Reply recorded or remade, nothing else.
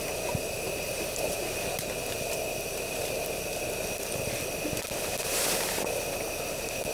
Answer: recorded